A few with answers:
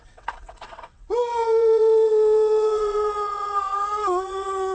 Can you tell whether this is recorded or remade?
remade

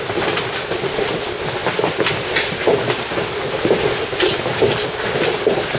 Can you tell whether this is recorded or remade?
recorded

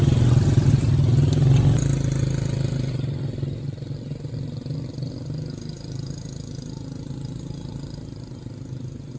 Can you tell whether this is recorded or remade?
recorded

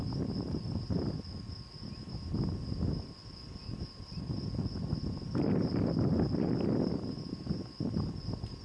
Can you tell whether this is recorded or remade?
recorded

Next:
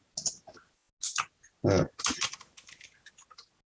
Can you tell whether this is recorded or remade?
recorded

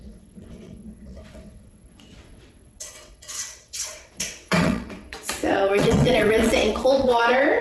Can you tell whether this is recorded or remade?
remade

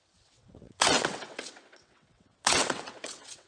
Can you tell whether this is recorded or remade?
remade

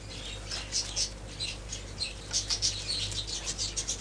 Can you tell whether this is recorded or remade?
recorded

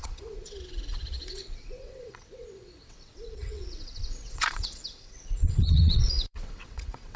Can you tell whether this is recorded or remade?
remade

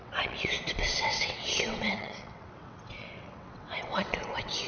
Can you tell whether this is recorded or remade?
remade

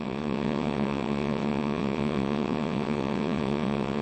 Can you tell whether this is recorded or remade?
remade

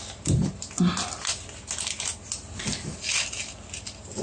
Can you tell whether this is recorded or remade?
recorded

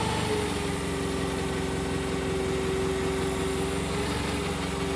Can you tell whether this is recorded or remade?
recorded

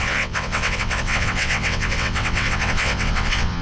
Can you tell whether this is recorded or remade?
remade